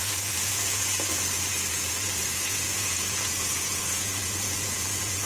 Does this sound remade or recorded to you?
remade